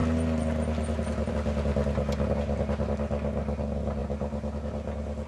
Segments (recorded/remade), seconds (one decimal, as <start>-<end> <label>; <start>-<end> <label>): 0.0-5.3 recorded